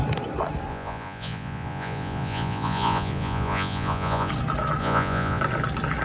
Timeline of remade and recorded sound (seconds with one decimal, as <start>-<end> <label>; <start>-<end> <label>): 0.0-0.7 recorded; 0.7-4.3 remade; 4.3-4.8 recorded; 4.8-5.4 remade; 5.4-6.0 recorded